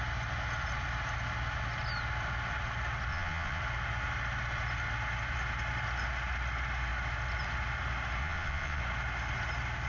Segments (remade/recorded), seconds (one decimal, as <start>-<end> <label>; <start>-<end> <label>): 0.0-3.1 recorded; 3.1-3.6 remade; 3.6-8.2 recorded; 8.2-8.8 remade; 8.8-9.9 recorded